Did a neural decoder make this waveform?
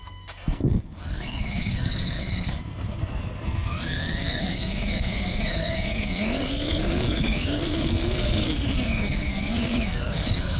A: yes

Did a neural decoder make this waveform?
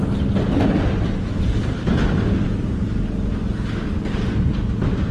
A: no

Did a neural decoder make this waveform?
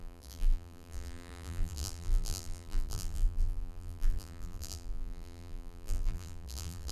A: yes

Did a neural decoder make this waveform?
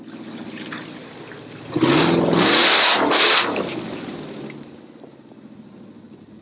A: no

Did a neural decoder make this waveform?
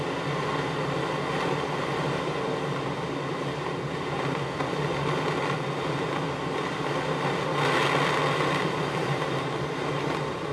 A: no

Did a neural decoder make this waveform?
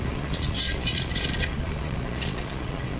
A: yes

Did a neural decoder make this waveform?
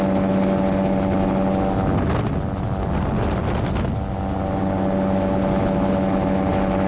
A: no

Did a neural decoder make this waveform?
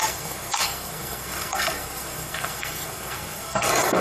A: yes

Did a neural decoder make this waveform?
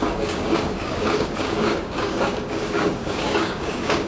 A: yes